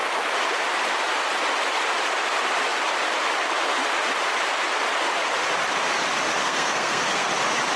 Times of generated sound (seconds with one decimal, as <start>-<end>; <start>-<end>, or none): 6.4-7.3